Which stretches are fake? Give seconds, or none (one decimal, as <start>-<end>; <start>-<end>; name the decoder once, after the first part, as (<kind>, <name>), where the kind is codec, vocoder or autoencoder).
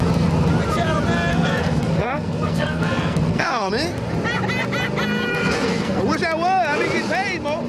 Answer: 1.3-3.7 (codec, SNAC); 5.3-6.0